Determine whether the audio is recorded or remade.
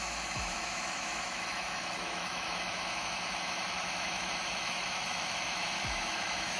remade